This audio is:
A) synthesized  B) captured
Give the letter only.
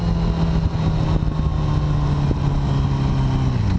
B